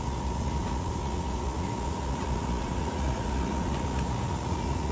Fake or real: fake